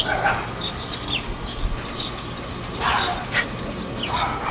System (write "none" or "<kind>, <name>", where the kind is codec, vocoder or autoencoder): none